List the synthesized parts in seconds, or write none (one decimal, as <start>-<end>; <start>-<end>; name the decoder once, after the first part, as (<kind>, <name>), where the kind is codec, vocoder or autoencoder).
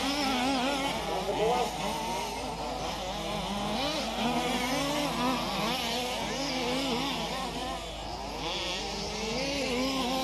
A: none